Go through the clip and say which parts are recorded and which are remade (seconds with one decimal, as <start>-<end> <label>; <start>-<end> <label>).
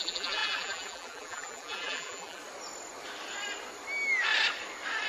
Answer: 0.0-2.4 remade; 2.4-5.1 recorded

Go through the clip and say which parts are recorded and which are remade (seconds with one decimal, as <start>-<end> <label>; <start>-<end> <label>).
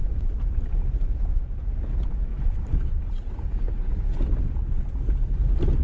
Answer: 0.0-1.8 remade; 1.8-2.3 recorded; 2.3-4.9 remade; 4.9-5.8 recorded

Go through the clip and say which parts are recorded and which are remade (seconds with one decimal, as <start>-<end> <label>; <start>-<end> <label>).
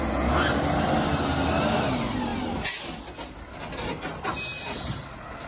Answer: 0.0-4.5 recorded; 4.5-5.1 remade; 5.1-5.5 recorded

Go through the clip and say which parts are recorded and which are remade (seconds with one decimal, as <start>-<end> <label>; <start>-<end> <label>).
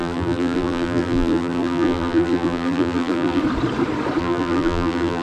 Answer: 0.0-3.4 remade; 3.4-4.2 recorded; 4.2-5.2 remade